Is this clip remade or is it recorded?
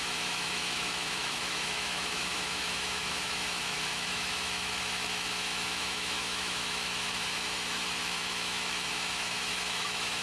remade